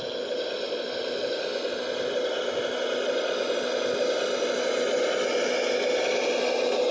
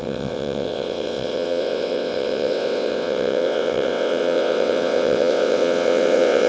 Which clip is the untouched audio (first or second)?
first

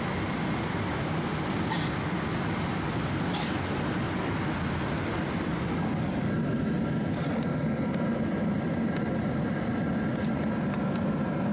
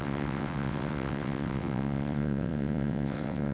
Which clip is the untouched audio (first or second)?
first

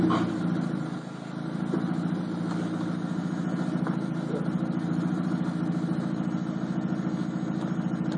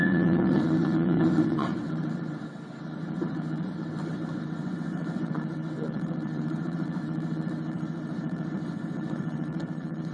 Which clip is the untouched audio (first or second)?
first